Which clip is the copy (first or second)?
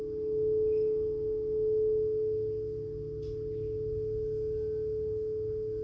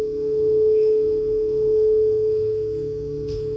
second